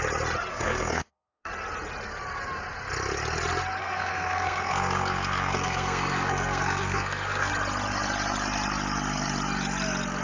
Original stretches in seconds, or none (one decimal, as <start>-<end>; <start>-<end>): 0.0-0.5; 1.5-3.8; 7.5-10.2